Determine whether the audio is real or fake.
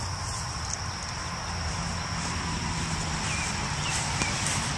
real